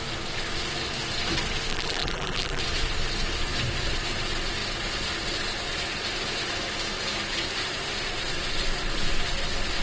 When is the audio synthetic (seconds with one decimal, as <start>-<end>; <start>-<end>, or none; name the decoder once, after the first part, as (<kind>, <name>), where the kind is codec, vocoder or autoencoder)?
1.7-2.6 (vocoder, BigVGAN v2)